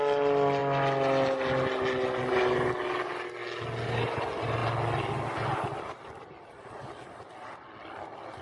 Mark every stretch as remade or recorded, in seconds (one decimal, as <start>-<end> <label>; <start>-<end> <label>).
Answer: 0.0-8.4 recorded